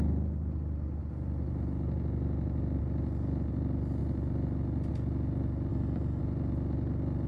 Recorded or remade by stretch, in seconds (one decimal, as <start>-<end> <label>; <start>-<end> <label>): 0.0-5.7 recorded; 5.7-6.2 remade; 6.2-7.3 recorded